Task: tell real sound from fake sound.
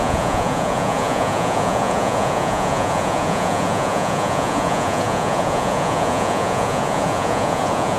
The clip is fake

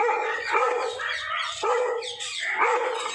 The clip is fake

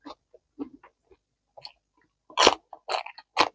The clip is real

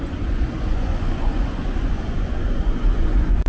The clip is fake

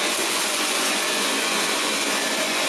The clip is fake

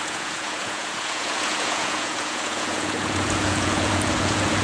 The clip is fake